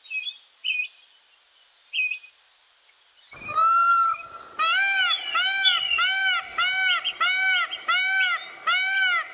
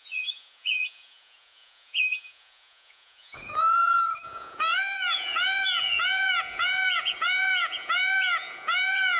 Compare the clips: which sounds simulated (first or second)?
second